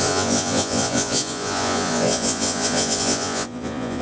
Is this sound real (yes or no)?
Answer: no